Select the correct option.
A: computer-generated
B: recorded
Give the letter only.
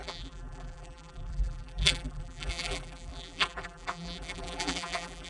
A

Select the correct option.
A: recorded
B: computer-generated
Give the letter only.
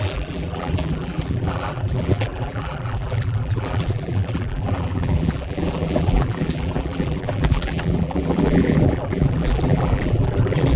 B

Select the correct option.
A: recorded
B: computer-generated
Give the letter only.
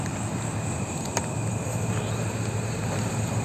A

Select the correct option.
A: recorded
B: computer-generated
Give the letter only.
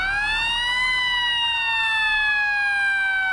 A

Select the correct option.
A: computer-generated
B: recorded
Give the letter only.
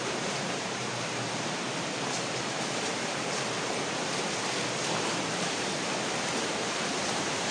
A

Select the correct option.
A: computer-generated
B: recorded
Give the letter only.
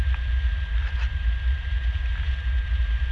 A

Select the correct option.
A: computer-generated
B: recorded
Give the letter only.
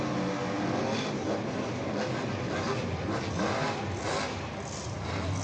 B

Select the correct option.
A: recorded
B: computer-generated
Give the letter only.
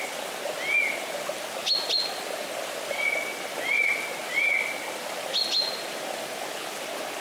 A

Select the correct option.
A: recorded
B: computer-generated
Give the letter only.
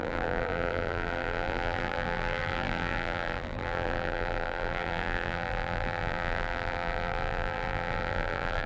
B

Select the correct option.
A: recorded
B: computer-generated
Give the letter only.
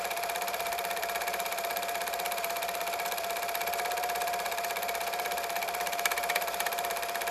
B